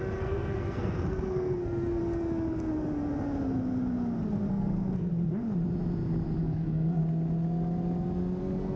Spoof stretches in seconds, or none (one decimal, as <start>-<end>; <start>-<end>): 0.0-2.0; 4.5-5.1; 6.4-7.0; 8.4-8.8